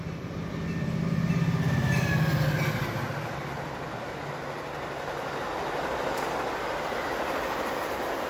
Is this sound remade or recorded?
recorded